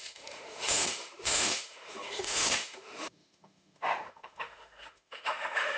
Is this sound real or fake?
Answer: fake